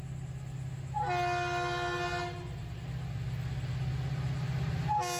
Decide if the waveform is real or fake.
real